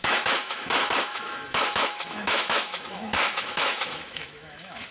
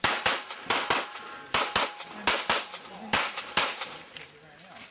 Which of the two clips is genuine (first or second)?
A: second